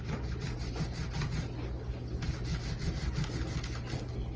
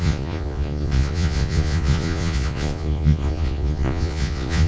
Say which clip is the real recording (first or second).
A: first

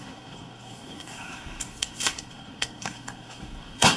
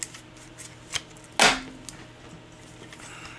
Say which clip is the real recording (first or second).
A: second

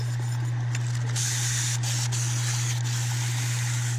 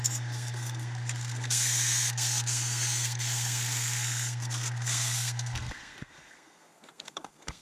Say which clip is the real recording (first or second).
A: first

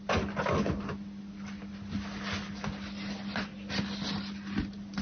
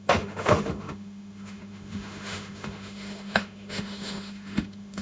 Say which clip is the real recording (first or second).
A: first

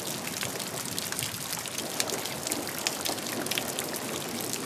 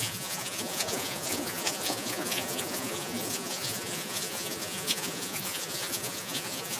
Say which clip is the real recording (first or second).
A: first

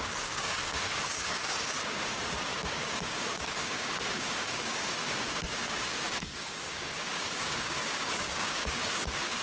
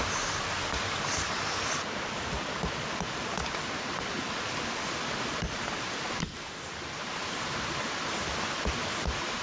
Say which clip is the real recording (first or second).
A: second